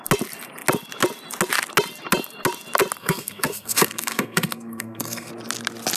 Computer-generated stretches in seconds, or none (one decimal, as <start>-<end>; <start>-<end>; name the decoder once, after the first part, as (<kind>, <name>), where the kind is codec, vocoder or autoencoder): 3.0-5.3 (codec, SNAC)